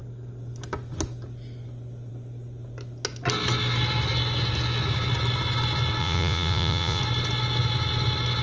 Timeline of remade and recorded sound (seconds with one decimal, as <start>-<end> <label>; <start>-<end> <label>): 0.0-6.0 recorded; 6.0-7.0 remade; 7.0-8.4 recorded